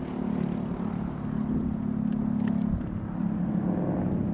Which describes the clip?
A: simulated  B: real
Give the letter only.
B